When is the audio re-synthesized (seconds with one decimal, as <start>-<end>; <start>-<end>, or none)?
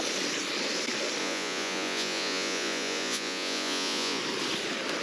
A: 1.2-4.2